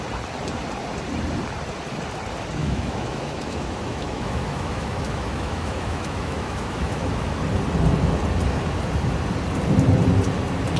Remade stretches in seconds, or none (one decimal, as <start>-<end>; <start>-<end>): 2.6-7.3